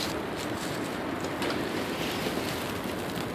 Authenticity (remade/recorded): recorded